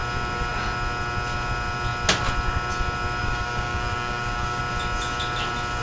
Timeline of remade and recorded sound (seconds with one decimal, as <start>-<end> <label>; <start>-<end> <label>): 0.0-3.2 recorded; 3.2-4.6 remade; 4.6-5.8 recorded